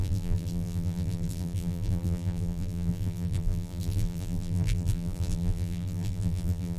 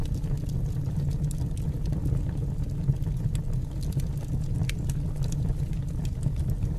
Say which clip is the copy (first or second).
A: first